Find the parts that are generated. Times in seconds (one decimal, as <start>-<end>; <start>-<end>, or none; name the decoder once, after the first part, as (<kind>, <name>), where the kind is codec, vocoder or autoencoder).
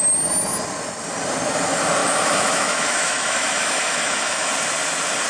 2.0-4.5 (autoencoder, DAC-VAE)